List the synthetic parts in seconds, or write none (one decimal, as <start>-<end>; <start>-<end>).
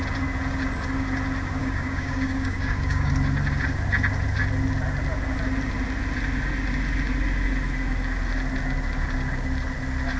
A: 1.6-3.1